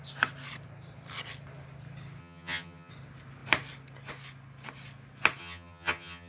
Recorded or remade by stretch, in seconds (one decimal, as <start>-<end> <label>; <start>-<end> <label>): 0.0-2.2 recorded; 2.2-2.9 remade; 2.9-5.4 recorded; 5.4-6.3 remade